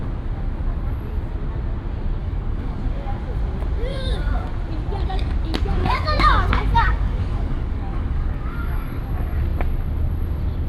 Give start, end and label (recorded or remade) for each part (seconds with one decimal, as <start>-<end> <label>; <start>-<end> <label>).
0.0-2.2 recorded; 2.2-2.8 remade; 2.8-3.9 recorded; 3.9-4.5 remade; 4.5-5.8 recorded; 5.8-9.0 remade; 9.0-10.7 recorded